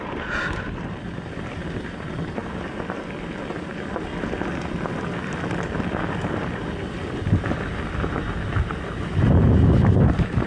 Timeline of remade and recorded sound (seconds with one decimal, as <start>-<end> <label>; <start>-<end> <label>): 0.0-10.5 recorded